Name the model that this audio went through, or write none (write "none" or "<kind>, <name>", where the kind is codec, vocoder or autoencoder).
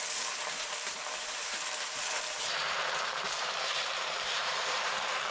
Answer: vocoder, BigVGAN v2